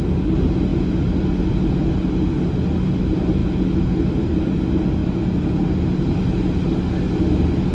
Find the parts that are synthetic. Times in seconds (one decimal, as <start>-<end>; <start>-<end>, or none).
none